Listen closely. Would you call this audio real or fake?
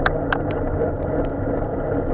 real